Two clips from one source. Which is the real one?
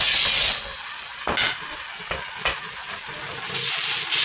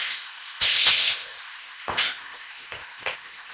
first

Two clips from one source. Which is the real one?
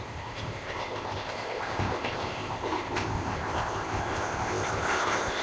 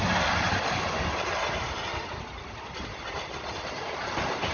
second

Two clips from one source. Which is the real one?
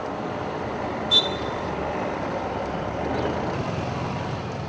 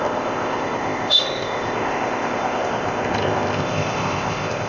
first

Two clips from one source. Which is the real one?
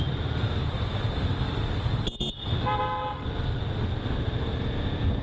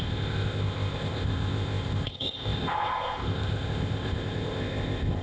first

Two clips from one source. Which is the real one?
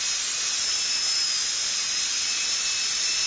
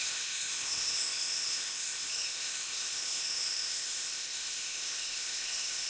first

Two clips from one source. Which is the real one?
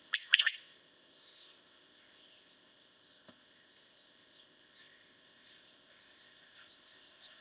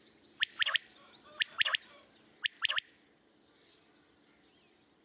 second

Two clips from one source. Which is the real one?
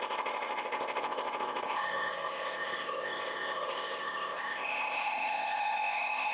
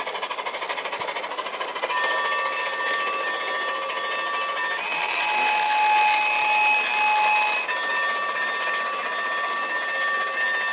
second